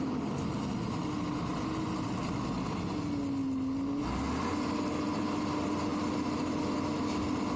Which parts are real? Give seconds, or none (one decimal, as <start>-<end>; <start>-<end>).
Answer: 0.0-7.6